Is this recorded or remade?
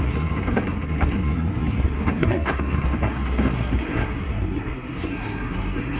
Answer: remade